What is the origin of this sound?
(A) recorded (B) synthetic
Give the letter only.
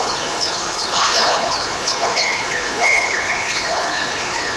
B